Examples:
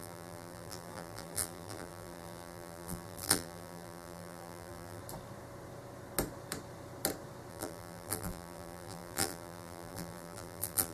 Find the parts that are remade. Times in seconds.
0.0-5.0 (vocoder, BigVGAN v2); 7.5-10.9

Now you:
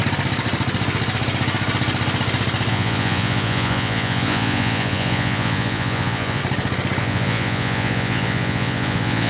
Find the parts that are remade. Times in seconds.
2.7-6.4 (vocoder, Vocos); 7.0-9.3

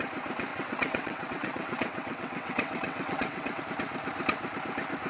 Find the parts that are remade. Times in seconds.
0.5-3.6 (vocoder, WaveNeXt)